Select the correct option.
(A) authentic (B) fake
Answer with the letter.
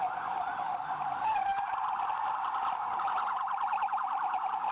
A